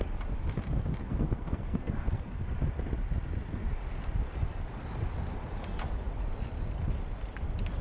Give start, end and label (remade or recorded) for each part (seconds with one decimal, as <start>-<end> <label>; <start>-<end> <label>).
0.0-1.0 recorded; 1.0-2.4 remade; 2.4-7.8 recorded